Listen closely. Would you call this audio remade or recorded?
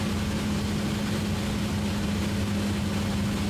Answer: recorded